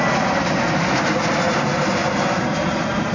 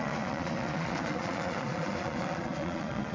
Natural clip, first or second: first